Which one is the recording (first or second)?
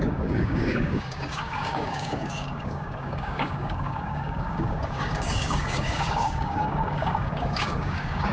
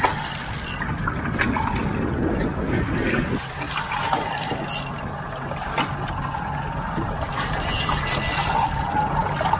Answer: second